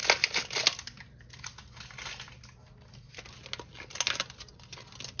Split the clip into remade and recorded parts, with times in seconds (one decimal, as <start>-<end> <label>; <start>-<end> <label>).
0.0-5.2 recorded